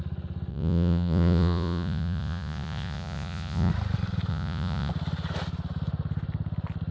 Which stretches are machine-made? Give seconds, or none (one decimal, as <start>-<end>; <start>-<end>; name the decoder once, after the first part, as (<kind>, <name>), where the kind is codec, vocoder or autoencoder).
0.5-3.7 (vocoder, Vocos); 4.3-4.9